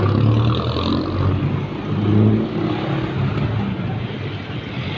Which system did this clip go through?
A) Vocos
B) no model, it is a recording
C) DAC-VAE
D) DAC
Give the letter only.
B